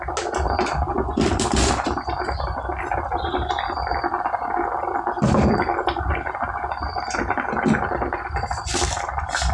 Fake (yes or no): no